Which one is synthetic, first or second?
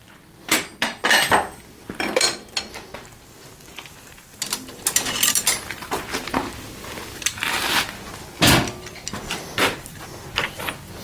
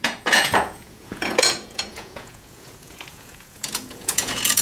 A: second